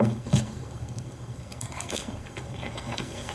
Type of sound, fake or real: fake